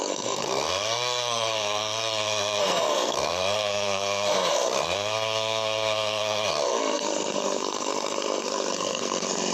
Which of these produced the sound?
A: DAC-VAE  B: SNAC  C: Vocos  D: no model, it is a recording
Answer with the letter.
B